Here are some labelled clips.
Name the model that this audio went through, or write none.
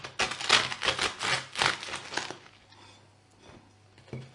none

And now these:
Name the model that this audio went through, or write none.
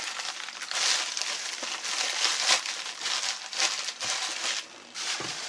none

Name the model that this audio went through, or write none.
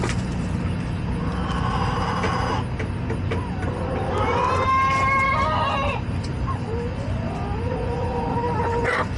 none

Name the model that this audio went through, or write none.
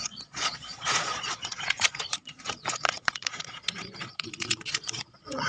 vocoder, Vocos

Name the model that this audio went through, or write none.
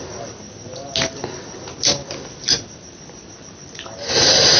none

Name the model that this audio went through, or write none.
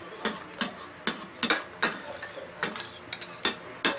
none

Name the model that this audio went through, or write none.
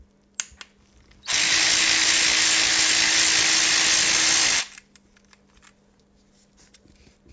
none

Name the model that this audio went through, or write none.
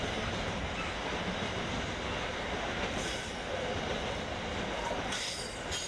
none